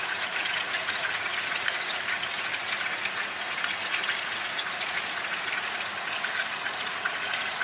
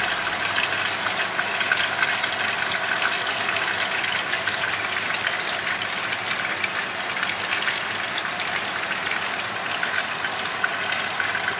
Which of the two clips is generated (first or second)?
first